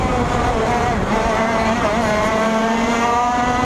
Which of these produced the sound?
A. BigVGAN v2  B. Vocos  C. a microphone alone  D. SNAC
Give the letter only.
A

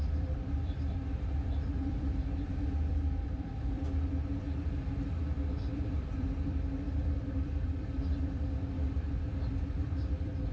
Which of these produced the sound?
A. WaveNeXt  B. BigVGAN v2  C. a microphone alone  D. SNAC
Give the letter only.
B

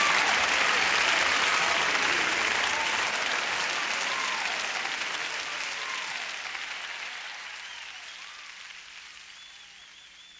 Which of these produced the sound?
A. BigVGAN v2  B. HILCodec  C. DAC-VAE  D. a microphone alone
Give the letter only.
D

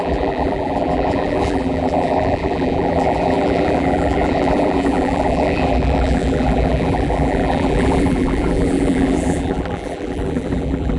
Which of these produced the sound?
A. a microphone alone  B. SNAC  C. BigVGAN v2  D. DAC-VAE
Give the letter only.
C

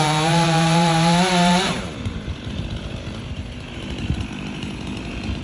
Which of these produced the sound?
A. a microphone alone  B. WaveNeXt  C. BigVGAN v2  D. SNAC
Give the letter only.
C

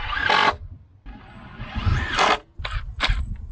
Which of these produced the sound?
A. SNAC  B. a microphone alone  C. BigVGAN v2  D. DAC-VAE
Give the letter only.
B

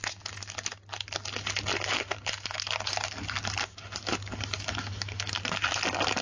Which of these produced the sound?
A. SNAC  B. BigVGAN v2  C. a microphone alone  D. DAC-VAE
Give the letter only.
C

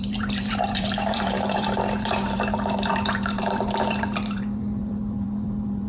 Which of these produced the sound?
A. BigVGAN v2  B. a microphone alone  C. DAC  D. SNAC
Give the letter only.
A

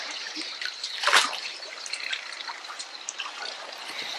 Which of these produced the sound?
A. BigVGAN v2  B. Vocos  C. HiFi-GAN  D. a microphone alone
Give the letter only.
A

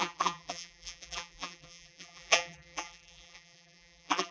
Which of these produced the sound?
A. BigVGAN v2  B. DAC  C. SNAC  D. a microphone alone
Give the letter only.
A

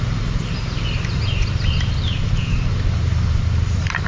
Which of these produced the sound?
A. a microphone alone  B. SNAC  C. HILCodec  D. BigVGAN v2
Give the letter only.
D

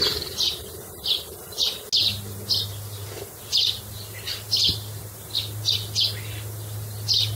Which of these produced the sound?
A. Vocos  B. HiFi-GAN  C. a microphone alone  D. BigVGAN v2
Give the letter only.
C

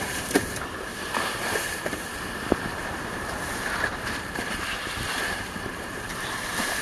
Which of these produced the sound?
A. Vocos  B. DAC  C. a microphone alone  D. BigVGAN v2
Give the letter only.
D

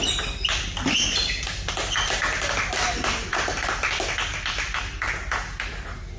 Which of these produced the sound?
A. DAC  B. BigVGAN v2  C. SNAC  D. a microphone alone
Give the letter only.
D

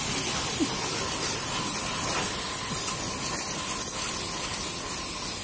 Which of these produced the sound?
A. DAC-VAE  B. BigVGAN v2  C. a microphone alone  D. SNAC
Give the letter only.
C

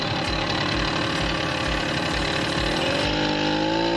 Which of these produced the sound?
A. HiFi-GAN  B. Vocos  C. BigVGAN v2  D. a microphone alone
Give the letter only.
D